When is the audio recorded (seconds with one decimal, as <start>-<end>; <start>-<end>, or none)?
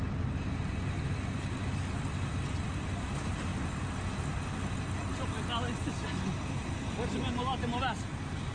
0.0-8.5